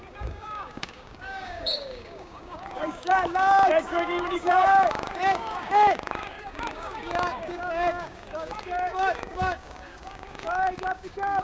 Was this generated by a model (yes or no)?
yes